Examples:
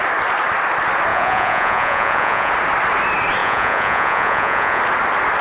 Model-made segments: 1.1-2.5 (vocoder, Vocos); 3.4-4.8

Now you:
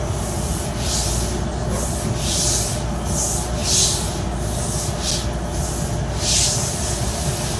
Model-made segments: none

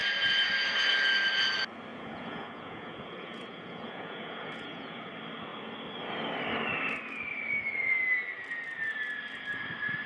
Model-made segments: 1.9-5.1 (vocoder, Vocos)

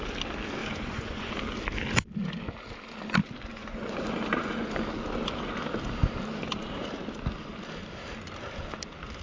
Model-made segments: 0.6-1.3 (vocoder, Vocos); 3.5-4.8

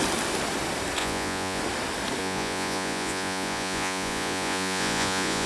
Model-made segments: 1.0-1.6 (vocoder, Vocos); 2.2-5.5

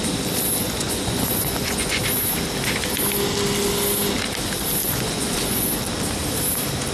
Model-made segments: 0.6-2.0 (vocoder, Vocos); 4.8-5.7

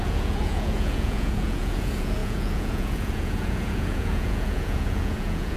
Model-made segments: 0.0-5.6 (vocoder, Vocos)

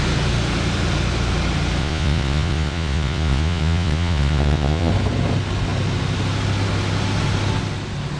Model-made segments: 1.8-4.9 (vocoder, Vocos)